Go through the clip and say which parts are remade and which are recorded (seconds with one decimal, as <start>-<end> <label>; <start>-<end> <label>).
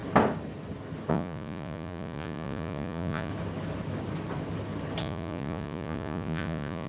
0.0-1.1 recorded; 1.1-3.3 remade; 3.3-5.0 recorded; 5.0-6.9 remade